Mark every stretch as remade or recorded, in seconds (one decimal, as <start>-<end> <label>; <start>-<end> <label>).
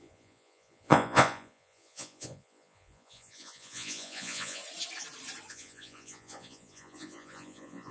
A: 0.0-4.6 remade; 4.6-5.5 recorded; 5.5-7.9 remade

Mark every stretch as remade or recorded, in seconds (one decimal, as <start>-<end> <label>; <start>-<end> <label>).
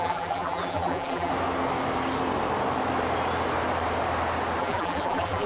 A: 0.0-1.3 remade; 1.3-4.6 recorded; 4.6-5.5 remade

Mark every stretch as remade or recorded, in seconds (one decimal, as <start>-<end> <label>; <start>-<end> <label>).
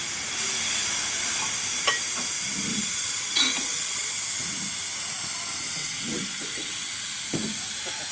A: 0.0-2.7 recorded; 2.7-4.1 remade; 4.1-5.8 recorded; 5.8-7.2 remade; 7.2-8.1 recorded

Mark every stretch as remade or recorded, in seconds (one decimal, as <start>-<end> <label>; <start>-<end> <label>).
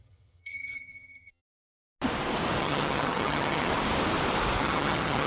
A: 0.0-1.4 remade; 1.4-2.6 recorded; 2.6-3.7 remade; 3.7-4.6 recorded; 4.6-5.3 remade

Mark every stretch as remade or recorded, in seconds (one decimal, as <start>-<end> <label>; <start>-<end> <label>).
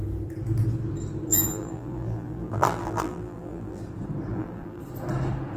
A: 0.0-1.3 recorded; 1.3-3.8 remade; 3.8-4.3 recorded; 4.3-4.8 remade; 4.8-5.6 recorded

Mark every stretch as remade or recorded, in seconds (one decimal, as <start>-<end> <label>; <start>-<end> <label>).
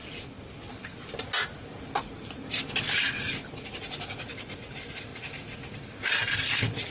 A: 0.0-6.9 recorded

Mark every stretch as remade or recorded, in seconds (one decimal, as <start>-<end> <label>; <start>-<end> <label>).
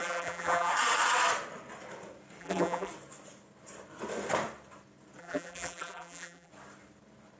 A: 0.0-0.7 remade; 0.7-2.4 recorded; 2.4-2.9 remade; 2.9-5.2 recorded; 5.2-6.5 remade; 6.5-7.4 recorded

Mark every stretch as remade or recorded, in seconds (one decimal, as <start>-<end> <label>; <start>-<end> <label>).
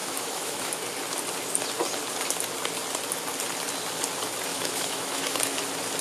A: 0.0-0.7 remade; 0.7-4.5 recorded; 4.5-5.6 remade; 5.6-6.0 recorded